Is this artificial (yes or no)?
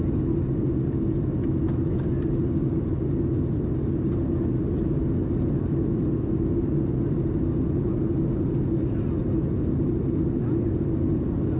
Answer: no